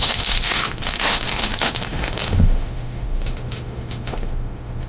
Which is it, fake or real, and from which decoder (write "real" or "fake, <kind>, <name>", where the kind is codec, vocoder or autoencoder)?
fake, autoencoder, DAC-VAE